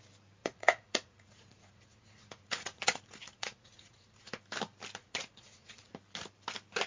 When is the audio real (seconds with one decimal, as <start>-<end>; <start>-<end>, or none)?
0.0-0.4; 4.4-5.0; 5.9-6.9